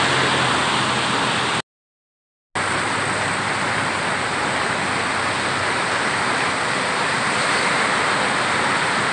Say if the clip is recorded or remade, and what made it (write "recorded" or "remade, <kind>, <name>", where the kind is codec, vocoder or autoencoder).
recorded